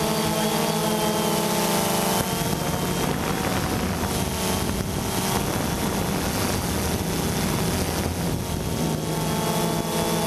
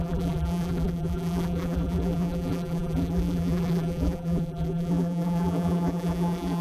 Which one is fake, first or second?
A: second